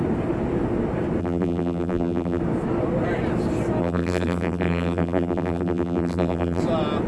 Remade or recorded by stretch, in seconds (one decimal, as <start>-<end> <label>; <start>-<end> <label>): 0.0-1.2 recorded; 1.2-2.4 remade; 2.4-3.8 recorded; 3.8-6.6 remade; 6.6-7.1 recorded